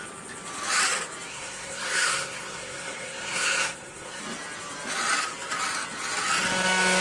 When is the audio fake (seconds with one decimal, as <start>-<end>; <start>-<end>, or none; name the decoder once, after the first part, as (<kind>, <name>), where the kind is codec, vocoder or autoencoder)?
1.3-4.2 (codec, SNAC)